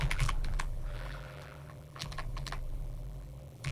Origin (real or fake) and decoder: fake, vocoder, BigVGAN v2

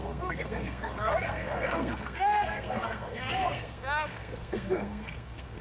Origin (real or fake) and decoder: fake, codec, SNAC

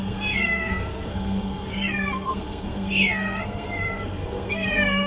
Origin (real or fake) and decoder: fake, codec, SNAC